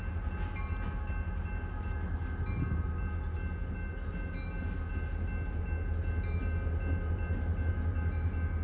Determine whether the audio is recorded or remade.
recorded